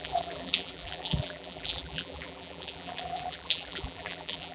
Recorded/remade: remade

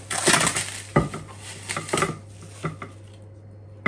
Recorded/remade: recorded